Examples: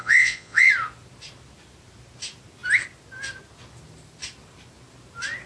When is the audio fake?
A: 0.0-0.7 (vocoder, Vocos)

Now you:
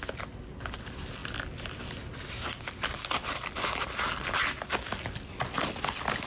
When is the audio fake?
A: none

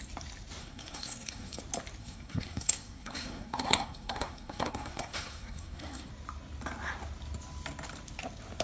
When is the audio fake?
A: 0.6-1.6 (codec, SNAC); 2.0-6.1